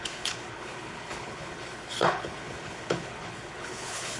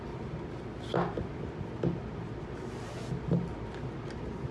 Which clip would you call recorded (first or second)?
second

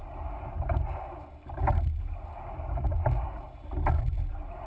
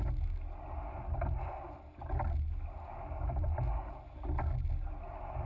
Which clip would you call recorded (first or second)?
second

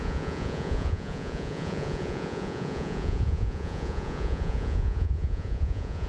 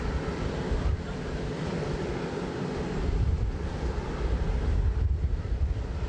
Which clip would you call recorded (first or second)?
second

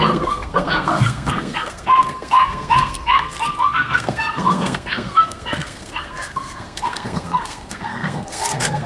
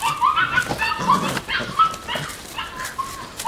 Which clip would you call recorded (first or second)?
second